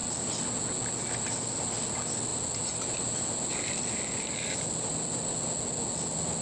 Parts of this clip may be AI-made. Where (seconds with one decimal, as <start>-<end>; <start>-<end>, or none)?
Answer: none